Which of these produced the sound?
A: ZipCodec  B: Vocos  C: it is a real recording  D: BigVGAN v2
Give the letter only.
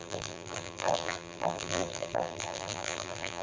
D